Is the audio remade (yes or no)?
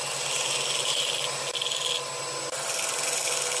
no